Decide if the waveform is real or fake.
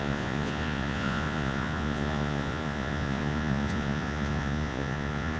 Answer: fake